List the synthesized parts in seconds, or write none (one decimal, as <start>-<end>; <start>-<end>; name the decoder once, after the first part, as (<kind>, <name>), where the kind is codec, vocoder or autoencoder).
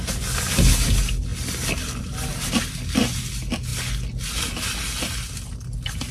none